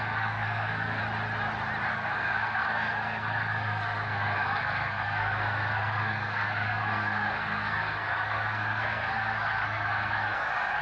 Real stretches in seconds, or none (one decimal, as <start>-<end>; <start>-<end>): 1.0-1.9